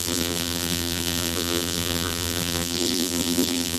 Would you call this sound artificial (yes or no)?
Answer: yes